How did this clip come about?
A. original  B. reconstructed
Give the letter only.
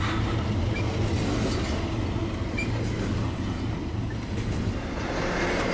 A